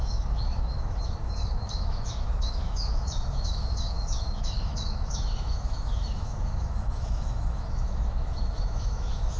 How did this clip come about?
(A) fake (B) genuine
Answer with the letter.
A